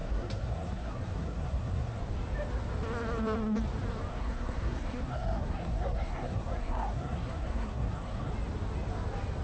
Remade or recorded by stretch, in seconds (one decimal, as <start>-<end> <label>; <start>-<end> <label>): 0.0-2.0 remade; 2.0-4.1 recorded; 4.1-8.3 remade; 8.3-9.4 recorded

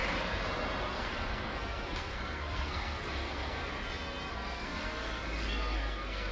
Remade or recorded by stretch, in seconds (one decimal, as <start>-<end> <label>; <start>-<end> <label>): 0.0-0.8 recorded; 0.8-3.6 remade; 3.6-4.3 recorded; 4.3-6.3 remade

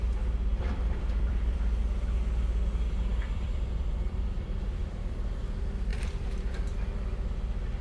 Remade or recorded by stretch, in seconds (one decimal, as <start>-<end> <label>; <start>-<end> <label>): 0.0-0.5 recorded; 0.5-1.6 remade; 1.6-3.1 recorded; 3.1-5.4 remade; 5.4-5.9 recorded; 5.9-6.8 remade; 6.8-7.8 recorded

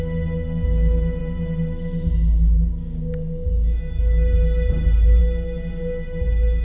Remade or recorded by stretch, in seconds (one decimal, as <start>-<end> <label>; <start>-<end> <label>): 0.0-6.6 recorded